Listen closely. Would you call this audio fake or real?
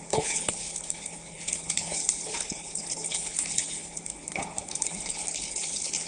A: fake